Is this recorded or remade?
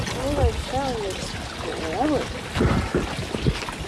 recorded